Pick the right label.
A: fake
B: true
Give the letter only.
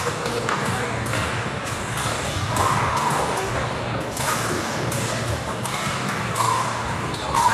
A